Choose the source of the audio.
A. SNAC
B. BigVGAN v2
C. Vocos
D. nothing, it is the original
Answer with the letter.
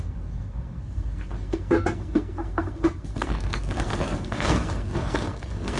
A